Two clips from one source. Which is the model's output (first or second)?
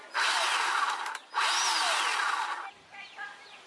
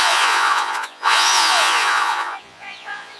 second